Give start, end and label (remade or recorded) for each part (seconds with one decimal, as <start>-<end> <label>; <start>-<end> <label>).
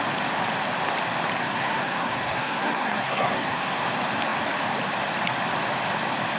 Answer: 0.0-1.4 recorded; 1.4-3.8 remade; 3.8-6.4 recorded